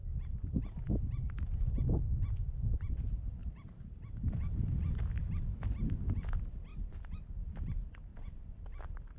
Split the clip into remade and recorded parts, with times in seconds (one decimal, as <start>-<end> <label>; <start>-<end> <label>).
0.0-3.4 recorded; 3.4-5.2 remade; 5.2-6.7 recorded; 6.7-7.6 remade; 7.6-8.1 recorded; 8.1-9.2 remade